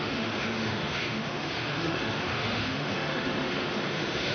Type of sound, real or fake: fake